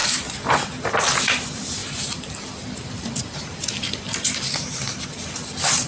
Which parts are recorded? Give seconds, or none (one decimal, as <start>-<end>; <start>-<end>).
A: none